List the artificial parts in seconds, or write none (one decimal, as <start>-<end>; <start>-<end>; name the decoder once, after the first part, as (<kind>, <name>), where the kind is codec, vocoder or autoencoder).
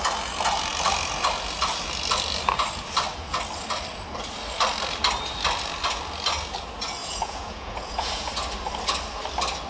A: 7.0-8.3 (vocoder, Vocos)